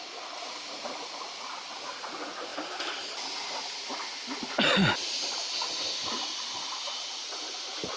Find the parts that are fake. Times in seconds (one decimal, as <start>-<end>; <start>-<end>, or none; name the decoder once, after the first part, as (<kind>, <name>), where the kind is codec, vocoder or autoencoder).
none